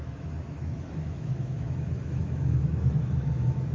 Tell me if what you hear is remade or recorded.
remade